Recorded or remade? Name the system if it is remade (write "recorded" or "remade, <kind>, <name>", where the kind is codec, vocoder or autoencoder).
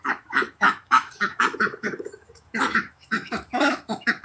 remade, autoencoder, DAC-VAE